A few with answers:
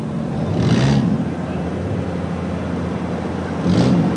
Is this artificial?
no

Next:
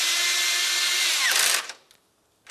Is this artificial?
no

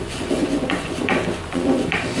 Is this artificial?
yes